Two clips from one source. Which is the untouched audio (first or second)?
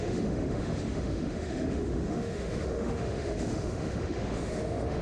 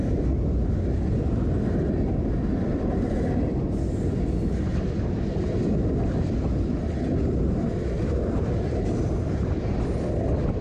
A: second